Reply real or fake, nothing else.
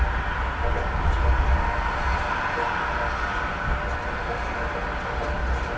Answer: real